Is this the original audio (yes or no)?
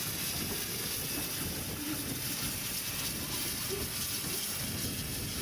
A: yes